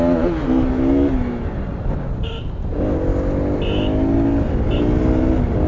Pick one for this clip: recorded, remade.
recorded